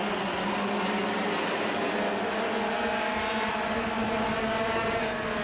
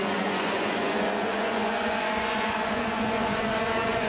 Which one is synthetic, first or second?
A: second